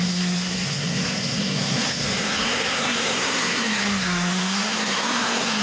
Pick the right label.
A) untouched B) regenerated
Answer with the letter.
B